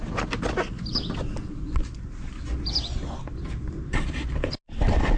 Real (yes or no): yes